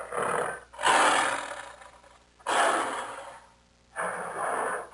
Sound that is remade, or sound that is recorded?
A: recorded